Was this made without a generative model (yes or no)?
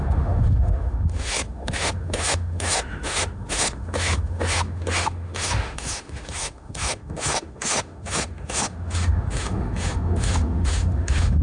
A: no